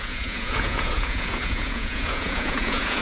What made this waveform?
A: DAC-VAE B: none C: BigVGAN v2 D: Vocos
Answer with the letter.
D